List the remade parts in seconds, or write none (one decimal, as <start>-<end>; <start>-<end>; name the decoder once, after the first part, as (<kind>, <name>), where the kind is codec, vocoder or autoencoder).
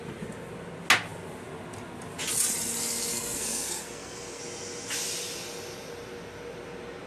3.1-4.4 (codec, SNAC)